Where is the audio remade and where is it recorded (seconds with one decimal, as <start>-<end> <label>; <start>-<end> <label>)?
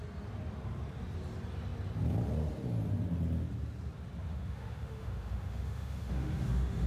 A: 0.0-4.3 recorded; 4.3-6.9 remade